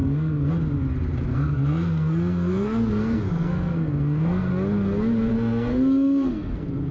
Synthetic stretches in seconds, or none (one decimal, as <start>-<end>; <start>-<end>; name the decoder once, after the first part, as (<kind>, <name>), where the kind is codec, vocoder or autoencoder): 0.0-0.5 (codec, SNAC); 1.3-4.5; 5.3-6.9